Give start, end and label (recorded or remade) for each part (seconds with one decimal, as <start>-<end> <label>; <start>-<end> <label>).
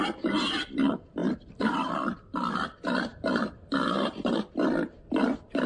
0.0-1.2 recorded; 1.2-1.9 remade; 1.9-3.1 recorded; 3.1-4.4 remade; 4.4-5.7 recorded